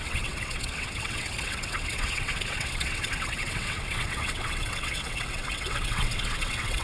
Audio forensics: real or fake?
fake